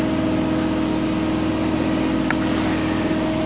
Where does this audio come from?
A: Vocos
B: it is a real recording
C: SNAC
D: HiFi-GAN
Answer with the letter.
B